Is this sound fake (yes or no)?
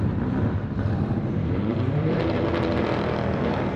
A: yes